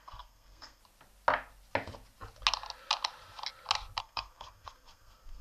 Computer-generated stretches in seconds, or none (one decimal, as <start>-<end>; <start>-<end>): 0.0-0.8; 4.0-5.4